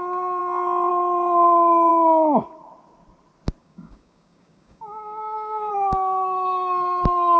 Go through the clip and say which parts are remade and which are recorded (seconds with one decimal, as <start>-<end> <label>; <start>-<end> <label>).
0.0-3.6 recorded; 3.6-5.7 remade; 5.7-7.4 recorded